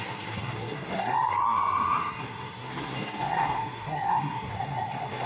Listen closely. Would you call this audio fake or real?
fake